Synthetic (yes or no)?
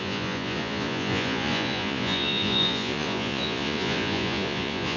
yes